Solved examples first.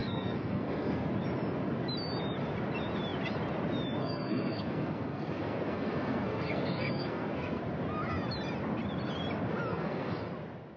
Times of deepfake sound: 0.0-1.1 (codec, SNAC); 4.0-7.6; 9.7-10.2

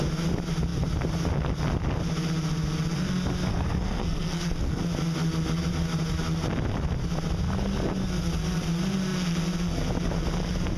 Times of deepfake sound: 3.5-4.8 (codec, SNAC)

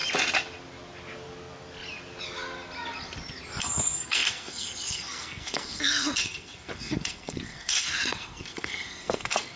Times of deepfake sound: 3.6-9.6 (codec, SNAC)

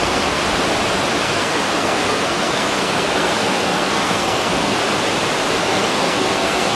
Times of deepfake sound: 0.0-0.4 (codec, SNAC); 1.2-4.8; 5.6-6.7

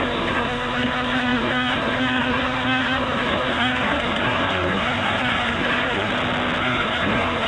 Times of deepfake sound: 0.0-6.1 (codec, SNAC); 6.6-7.5

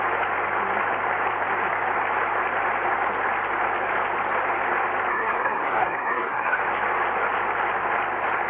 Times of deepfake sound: 5.1-6.6 (codec, SNAC)

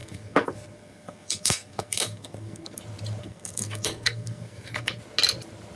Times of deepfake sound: 0.0-2.8 (codec, SNAC); 3.2-5.0

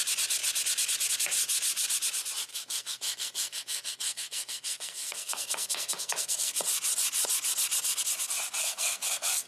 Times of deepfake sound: 2.5-6.6 (codec, SNAC); 8.6-9.5